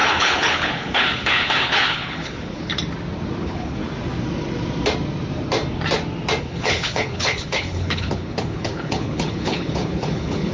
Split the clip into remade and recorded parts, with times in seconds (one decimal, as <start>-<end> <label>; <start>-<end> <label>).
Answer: 0.0-2.7 remade; 2.7-3.4 recorded; 3.4-3.8 remade; 3.8-6.4 recorded; 6.4-10.5 remade